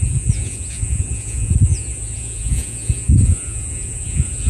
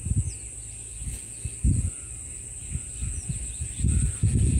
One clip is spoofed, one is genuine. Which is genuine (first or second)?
second